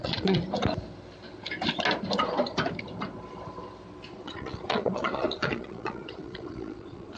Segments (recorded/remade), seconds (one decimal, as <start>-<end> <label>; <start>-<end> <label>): 0.0-0.4 remade; 0.4-4.1 recorded; 4.1-7.2 remade